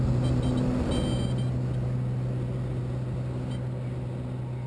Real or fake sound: real